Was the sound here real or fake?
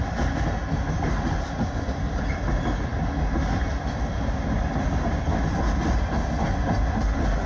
real